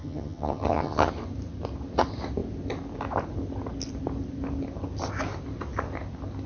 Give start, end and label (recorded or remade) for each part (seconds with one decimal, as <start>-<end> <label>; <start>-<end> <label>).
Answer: 0.0-1.1 remade; 1.1-6.5 recorded